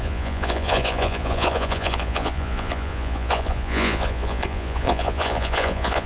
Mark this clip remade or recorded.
remade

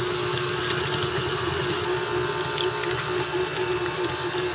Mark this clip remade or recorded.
recorded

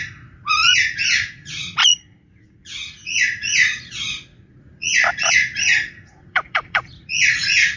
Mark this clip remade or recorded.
remade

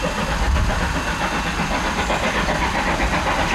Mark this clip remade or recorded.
recorded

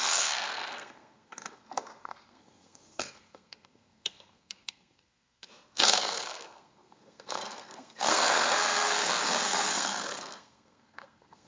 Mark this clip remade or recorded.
remade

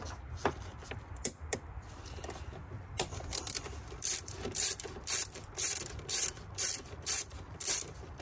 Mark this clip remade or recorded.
remade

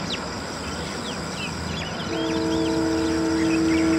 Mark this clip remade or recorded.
recorded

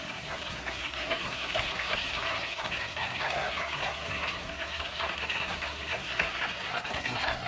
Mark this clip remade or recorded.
remade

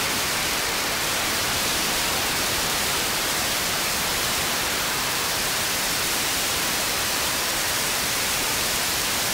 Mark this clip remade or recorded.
remade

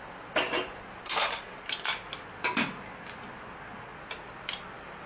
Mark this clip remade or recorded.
recorded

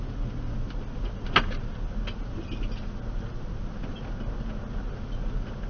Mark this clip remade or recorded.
recorded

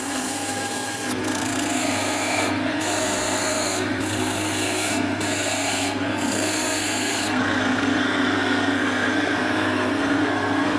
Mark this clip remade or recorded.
remade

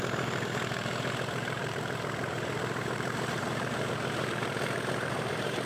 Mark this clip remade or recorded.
remade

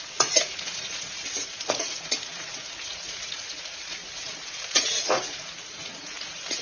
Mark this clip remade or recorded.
remade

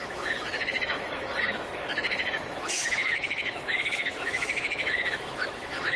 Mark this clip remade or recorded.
remade